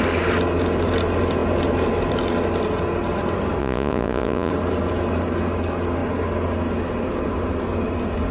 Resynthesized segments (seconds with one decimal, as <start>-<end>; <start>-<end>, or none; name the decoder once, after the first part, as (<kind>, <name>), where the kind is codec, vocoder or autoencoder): 3.6-4.5 (vocoder, Vocos)